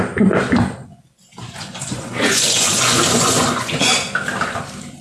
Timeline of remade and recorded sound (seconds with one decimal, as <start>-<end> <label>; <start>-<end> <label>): 0.0-0.9 recorded; 0.9-3.9 remade; 3.9-5.0 recorded